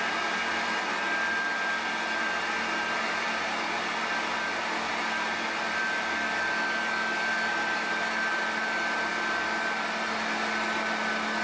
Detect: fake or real real